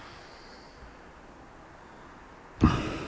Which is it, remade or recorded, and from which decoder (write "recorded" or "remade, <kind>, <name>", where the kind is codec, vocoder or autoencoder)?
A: recorded